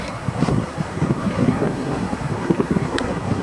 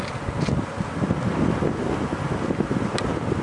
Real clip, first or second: second